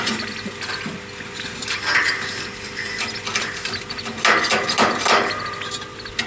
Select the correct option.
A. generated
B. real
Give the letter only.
B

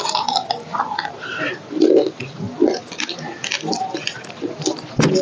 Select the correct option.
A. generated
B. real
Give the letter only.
B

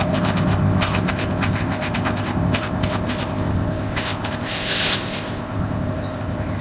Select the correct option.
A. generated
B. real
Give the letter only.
A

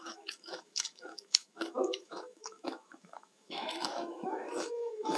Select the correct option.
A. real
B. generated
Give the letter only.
B